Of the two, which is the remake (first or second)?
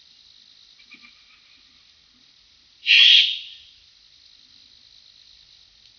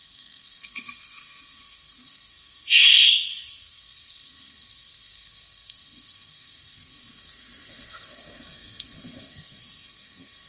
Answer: second